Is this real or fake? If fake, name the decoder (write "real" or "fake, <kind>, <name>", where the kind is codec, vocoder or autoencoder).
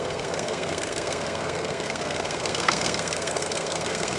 fake, codec, SNAC